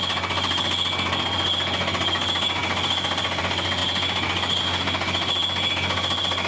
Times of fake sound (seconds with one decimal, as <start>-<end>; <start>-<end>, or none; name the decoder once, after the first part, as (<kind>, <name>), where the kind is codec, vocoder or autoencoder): none